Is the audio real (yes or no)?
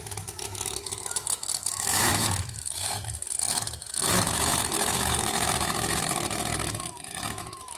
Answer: no